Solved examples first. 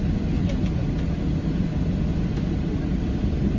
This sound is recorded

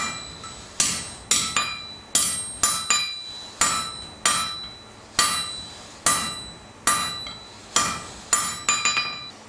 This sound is recorded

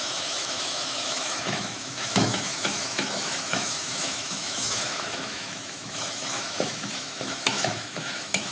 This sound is remade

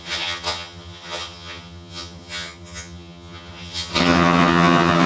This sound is remade